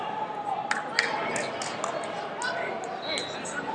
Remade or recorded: recorded